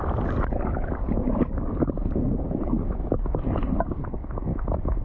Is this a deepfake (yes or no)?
no